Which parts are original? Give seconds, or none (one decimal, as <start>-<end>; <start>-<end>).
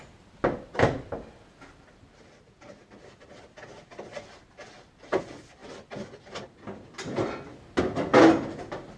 0.0-9.0